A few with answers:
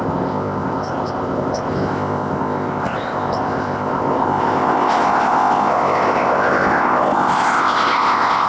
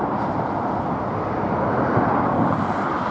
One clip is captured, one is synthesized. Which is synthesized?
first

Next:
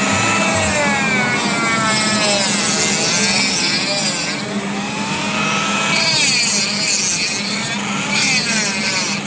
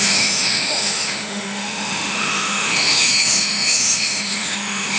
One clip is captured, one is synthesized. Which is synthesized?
second